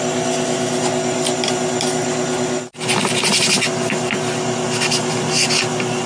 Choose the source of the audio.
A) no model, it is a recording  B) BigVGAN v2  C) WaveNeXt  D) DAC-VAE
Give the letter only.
A